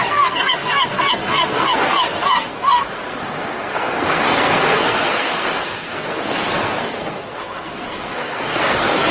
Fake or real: fake